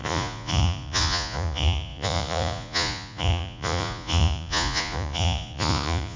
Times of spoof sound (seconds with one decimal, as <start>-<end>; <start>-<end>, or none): 0.0-6.2